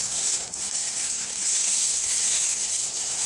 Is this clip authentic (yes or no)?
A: no